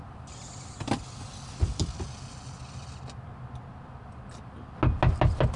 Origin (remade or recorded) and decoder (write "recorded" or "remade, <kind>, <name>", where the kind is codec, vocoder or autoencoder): recorded